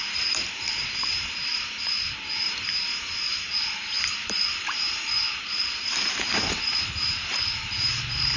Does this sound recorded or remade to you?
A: remade